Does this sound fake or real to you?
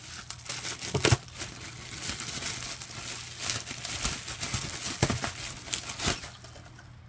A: real